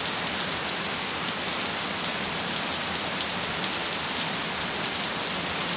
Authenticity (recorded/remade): recorded